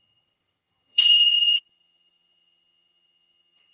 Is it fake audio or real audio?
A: fake